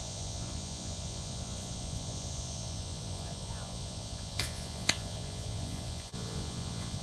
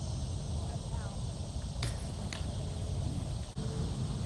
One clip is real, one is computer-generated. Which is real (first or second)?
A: second